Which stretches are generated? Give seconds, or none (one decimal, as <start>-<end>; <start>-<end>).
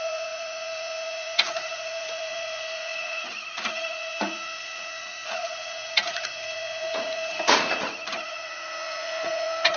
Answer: 0.0-9.8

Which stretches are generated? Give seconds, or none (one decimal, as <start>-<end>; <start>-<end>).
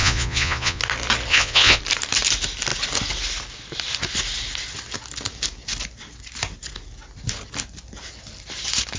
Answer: 0.0-0.8; 1.3-1.8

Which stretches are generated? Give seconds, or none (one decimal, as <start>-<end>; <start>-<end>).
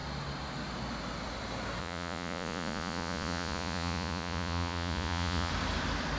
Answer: 1.8-5.5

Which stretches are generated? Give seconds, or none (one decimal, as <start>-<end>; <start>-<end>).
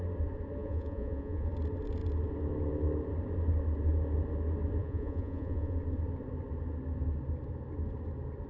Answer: 0.6-1.5; 4.8-5.8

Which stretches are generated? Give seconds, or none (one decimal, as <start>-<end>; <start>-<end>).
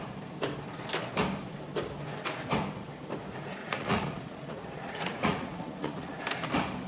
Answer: 3.6-6.2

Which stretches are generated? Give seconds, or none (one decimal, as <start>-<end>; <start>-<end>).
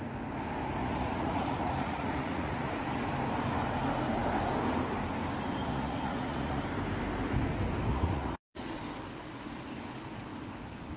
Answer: 0.8-2.7; 5.6-6.6; 7.9-8.8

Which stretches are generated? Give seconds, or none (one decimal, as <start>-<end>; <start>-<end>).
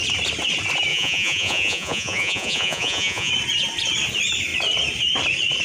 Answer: 0.9-3.3